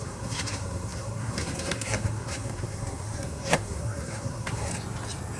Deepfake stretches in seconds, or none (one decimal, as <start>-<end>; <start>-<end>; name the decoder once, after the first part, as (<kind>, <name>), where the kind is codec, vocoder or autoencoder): 0.0-4.7 (codec, SNAC)